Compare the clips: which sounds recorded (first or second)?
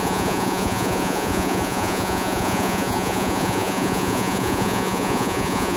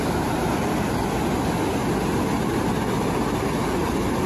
second